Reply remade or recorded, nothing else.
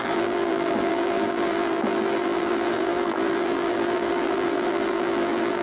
remade